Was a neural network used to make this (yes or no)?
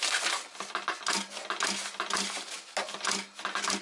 no